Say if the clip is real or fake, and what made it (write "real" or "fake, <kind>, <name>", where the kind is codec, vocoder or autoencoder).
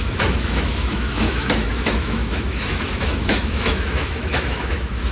fake, autoencoder, DAC-VAE